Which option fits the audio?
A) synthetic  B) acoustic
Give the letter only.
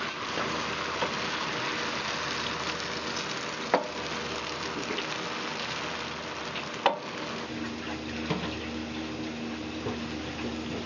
B